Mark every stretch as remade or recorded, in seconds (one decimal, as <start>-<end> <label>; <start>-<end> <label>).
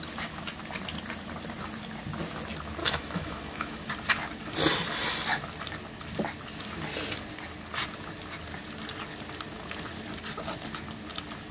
0.0-2.8 recorded; 2.8-3.9 remade; 3.9-11.5 recorded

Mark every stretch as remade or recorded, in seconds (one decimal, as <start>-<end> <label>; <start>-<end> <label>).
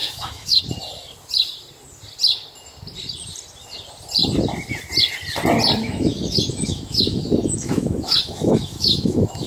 0.0-0.6 remade; 0.6-5.8 recorded; 5.8-9.5 remade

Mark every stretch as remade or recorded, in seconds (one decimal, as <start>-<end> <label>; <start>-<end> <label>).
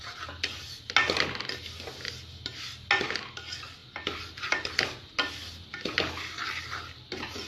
0.0-7.5 recorded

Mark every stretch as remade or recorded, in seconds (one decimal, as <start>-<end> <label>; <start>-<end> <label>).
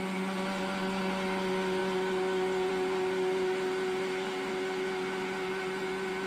0.0-6.3 recorded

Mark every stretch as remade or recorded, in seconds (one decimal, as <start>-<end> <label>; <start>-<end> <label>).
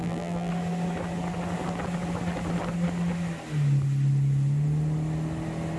0.0-0.5 remade; 0.5-5.8 recorded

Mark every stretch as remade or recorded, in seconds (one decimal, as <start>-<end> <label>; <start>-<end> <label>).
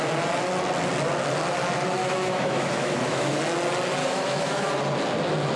0.0-2.0 recorded; 2.0-3.4 remade; 3.4-4.0 recorded; 4.0-4.7 remade; 4.7-5.6 recorded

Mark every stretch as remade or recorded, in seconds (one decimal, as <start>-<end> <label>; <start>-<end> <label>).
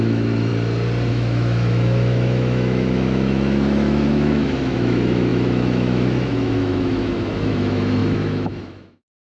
0.0-0.5 remade; 0.5-1.1 recorded; 1.1-9.4 remade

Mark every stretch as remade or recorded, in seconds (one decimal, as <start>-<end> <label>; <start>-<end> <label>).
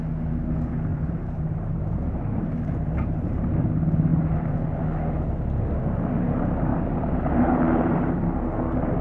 0.0-0.9 recorded; 0.9-3.5 remade; 3.5-4.1 recorded; 4.1-4.8 remade; 4.8-6.7 recorded; 6.7-8.1 remade; 8.1-9.0 recorded